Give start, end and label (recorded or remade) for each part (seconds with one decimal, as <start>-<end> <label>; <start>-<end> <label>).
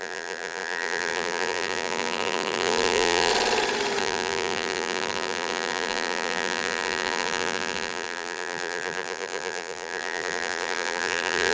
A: 0.0-3.3 remade; 3.3-4.0 recorded; 4.0-11.5 remade